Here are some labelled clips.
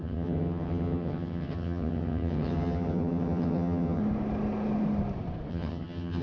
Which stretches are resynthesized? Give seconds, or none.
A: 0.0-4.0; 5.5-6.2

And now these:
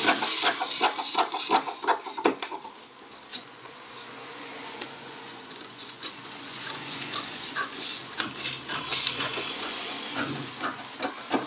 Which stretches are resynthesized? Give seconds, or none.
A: 3.3-8.3; 8.9-10.8

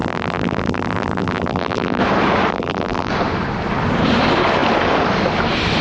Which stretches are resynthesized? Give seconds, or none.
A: 0.0-2.0; 2.5-3.1

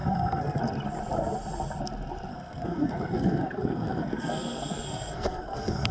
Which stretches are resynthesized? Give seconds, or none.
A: 0.0-0.6; 2.3-5.9